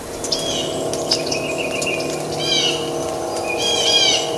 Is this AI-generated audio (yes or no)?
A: no